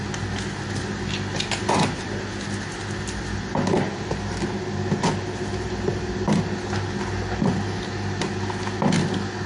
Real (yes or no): yes